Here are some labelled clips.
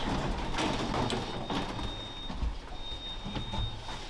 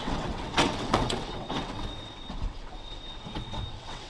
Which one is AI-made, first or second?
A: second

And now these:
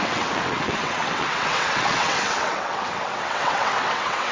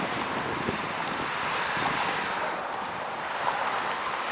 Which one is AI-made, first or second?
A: first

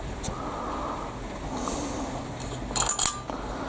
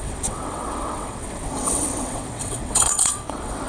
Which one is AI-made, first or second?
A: second